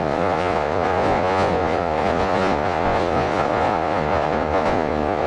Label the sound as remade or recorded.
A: remade